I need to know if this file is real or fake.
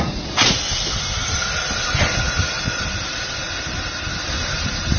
real